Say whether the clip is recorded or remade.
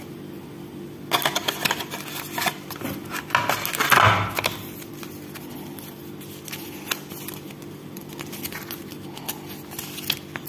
recorded